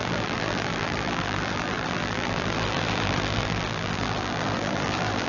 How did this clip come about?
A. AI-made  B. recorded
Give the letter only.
A